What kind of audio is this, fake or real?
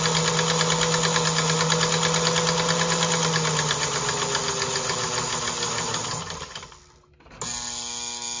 real